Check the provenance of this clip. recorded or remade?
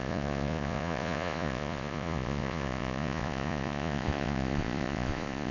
remade